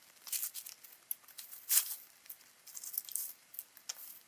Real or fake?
real